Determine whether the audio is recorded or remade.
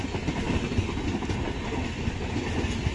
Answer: recorded